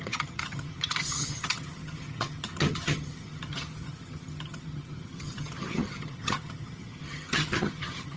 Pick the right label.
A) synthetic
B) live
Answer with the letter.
A